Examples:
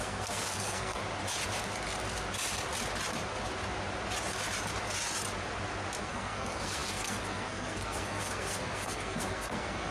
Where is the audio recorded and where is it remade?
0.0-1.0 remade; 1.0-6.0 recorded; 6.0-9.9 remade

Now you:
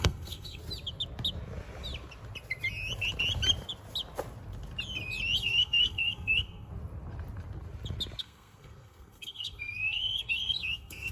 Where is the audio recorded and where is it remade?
0.0-0.6 remade; 0.6-5.4 recorded; 5.4-6.7 remade; 6.7-8.2 recorded; 8.2-11.1 remade

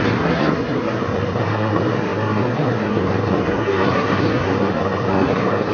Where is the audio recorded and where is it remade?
0.0-5.7 remade

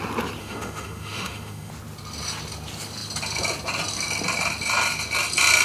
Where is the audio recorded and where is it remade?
0.0-0.4 recorded; 0.4-1.7 remade; 1.7-5.6 recorded

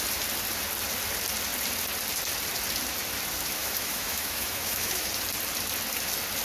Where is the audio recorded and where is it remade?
0.0-3.6 recorded; 3.6-5.1 remade; 5.1-6.4 recorded

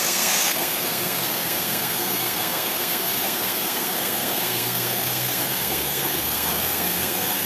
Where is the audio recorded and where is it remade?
0.0-7.5 remade

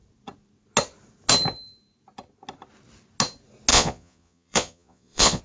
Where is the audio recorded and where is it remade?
0.0-3.7 recorded; 3.7-5.4 remade